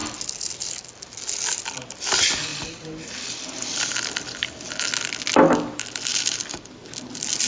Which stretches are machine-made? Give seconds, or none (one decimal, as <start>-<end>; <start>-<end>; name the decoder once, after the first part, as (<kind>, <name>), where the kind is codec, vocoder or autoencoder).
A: 2.5-4.9 (vocoder, BigVGAN v2); 6.1-6.7